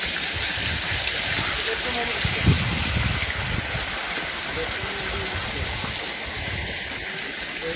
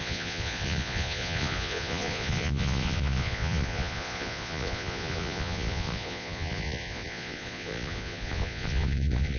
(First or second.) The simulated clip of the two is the second